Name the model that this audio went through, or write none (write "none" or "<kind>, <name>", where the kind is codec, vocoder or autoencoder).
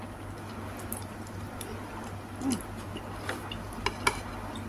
none